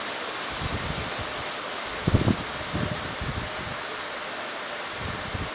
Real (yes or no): yes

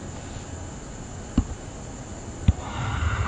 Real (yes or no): yes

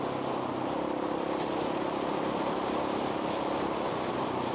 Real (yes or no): yes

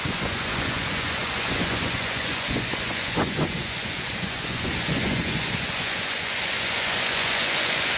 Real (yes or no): no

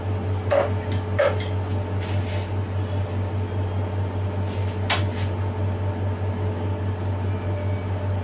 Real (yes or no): yes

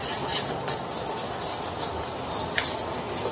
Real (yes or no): yes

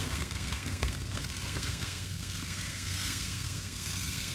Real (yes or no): no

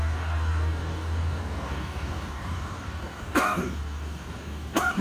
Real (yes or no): no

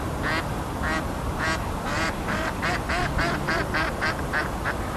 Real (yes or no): yes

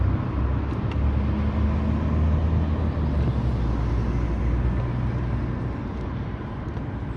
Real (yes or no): yes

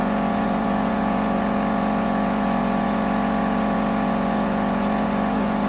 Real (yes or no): no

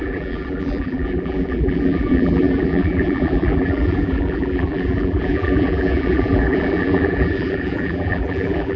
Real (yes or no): no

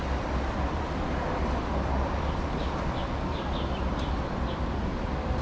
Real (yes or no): yes